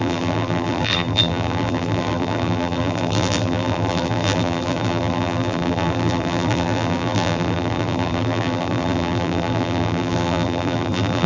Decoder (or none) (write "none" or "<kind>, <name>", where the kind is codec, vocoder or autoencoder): vocoder, BigVGAN v2